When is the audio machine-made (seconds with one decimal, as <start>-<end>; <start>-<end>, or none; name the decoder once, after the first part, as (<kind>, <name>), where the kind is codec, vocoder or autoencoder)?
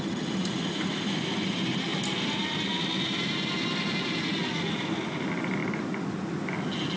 none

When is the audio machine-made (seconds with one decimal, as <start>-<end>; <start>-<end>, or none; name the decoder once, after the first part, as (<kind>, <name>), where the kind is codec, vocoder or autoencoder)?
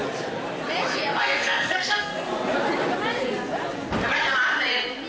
1.2-2.1 (codec, SNAC)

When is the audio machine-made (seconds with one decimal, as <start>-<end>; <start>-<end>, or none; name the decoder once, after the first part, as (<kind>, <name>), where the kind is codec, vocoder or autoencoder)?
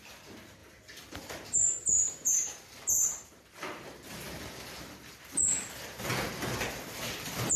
0.0-2.4 (vocoder, BigVGAN v2); 4.8-6.1; 6.7-7.6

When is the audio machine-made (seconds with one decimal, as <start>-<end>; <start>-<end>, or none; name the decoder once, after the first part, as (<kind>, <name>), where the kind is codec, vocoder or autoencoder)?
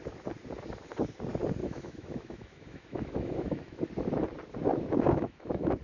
1.6-3.8 (autoencoder, DAC-VAE); 4.7-5.8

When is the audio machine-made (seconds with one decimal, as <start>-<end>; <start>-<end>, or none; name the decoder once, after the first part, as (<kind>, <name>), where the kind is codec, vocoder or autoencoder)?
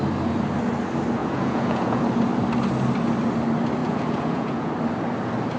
1.2-2.0 (vocoder, Vocos); 3.8-4.7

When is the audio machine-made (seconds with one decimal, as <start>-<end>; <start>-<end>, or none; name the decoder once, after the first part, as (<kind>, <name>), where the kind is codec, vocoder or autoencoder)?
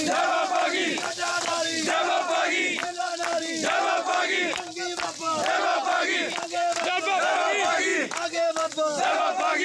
0.0-2.1 (vocoder, BigVGAN v2); 7.9-9.2